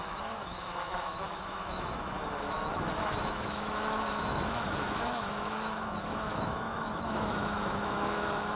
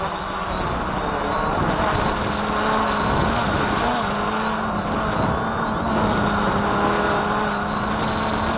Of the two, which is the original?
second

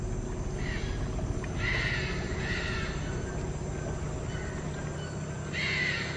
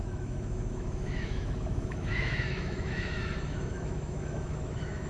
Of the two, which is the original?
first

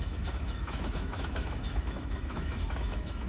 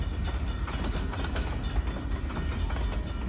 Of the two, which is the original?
second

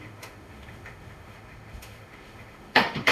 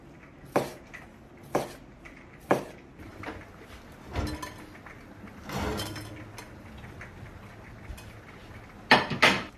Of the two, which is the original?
second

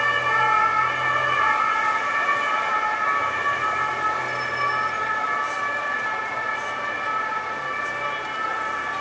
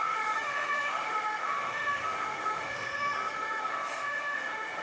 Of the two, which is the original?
first